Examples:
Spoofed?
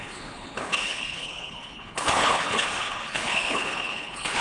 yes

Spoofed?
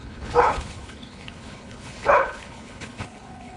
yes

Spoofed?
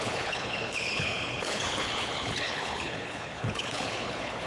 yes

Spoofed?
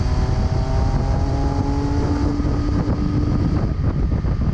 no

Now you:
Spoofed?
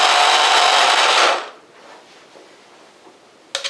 no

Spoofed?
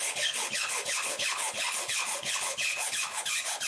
yes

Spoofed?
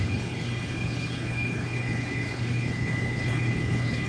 yes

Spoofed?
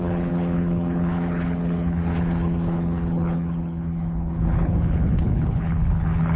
yes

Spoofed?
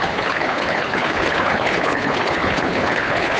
yes